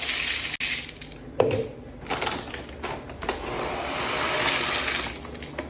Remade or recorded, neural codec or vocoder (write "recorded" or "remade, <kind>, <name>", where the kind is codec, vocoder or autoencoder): recorded